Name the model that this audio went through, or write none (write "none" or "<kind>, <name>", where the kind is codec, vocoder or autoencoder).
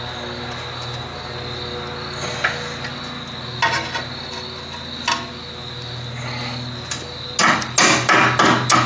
none